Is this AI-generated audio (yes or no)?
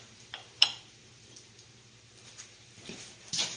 yes